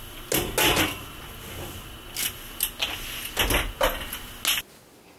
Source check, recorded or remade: recorded